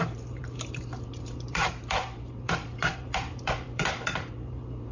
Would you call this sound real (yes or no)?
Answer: no